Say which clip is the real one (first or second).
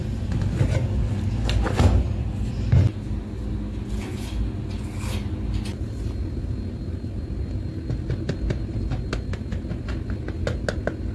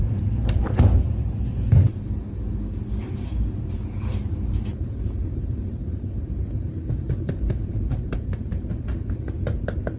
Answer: first